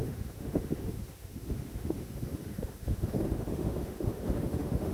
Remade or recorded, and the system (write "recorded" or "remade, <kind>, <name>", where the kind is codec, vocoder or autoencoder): remade, autoencoder, DAC-VAE